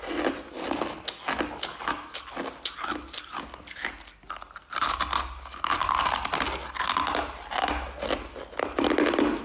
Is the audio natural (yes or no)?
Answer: yes